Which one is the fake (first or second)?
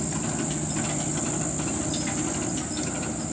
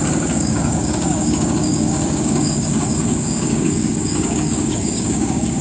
second